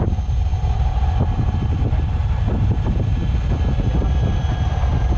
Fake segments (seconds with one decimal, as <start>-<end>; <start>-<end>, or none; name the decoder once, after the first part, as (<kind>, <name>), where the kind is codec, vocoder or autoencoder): 0.5-3.3 (vocoder, BigVGAN v2)